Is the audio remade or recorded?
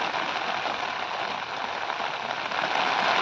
recorded